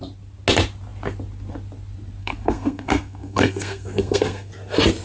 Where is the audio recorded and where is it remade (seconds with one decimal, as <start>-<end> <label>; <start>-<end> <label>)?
0.0-2.2 recorded; 2.2-4.5 remade; 4.5-5.0 recorded